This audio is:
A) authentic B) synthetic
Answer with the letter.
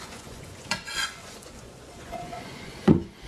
B